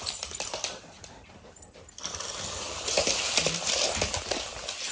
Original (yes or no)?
no